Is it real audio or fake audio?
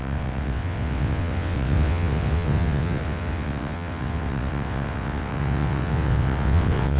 fake